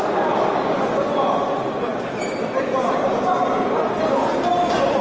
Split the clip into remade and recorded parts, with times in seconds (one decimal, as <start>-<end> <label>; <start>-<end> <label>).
0.0-5.0 recorded